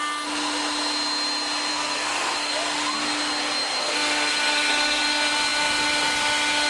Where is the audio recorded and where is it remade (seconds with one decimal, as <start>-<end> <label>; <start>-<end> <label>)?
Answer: 0.0-1.7 recorded; 1.7-2.5 remade; 2.5-3.8 recorded; 3.8-5.0 remade; 5.0-6.7 recorded